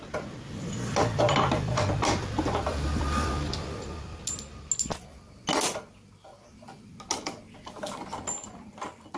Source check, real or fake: real